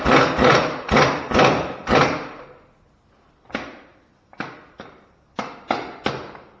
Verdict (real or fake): real